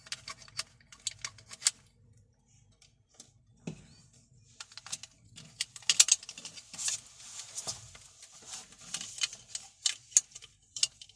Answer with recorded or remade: recorded